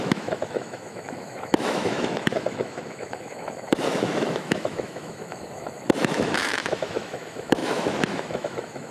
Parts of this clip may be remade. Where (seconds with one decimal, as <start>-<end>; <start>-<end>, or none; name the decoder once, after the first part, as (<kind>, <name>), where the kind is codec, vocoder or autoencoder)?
0.0-8.9 (autoencoder, DAC-VAE)